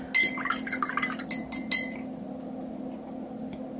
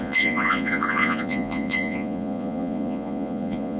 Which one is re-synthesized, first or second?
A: second